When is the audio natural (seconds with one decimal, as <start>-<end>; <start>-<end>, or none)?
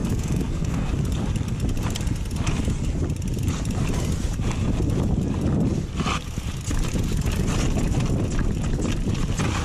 0.9-9.6